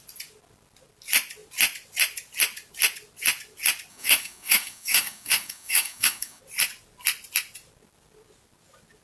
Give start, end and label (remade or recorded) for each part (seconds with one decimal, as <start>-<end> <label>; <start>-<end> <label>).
0.0-3.9 recorded; 3.9-6.4 remade; 6.4-9.0 recorded